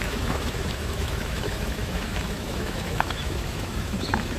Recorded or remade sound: remade